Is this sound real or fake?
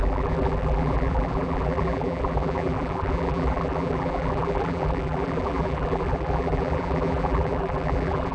fake